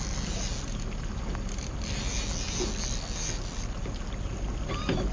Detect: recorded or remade recorded